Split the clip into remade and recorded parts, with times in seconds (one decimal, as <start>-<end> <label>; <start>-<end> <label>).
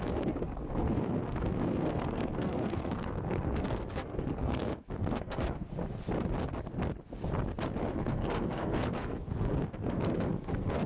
0.0-5.8 remade; 5.8-7.9 recorded; 7.9-10.9 remade